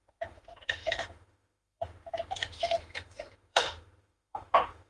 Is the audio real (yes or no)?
no